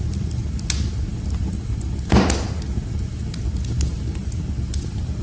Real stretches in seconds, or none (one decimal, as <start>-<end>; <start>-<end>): 0.0-5.2